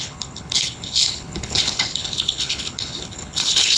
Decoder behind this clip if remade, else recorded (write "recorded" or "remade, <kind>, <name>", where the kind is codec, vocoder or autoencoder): remade, codec, HILCodec